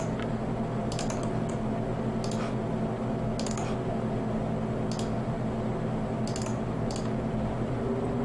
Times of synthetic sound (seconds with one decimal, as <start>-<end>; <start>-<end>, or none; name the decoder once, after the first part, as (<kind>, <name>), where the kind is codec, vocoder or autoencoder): none